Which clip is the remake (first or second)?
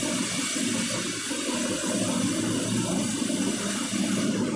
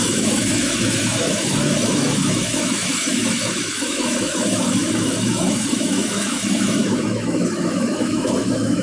second